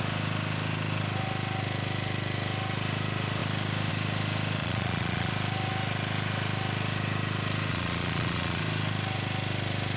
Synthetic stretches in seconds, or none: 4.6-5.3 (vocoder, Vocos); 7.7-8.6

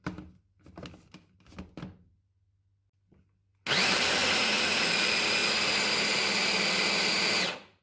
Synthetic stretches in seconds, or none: 4.2-4.9 (vocoder, Vocos)

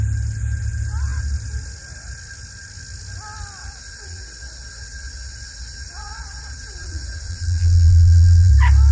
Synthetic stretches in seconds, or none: 3.6-8.5 (vocoder, Vocos)

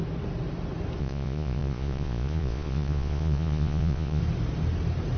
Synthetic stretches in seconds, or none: 1.0-4.2 (vocoder, Vocos)

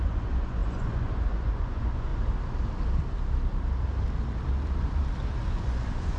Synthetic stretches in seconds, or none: 0.0-2.1 (vocoder, Vocos); 5.5-6.2

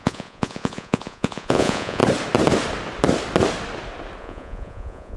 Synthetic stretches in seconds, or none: 0.0-2.0 (vocoder, Vocos); 4.2-5.2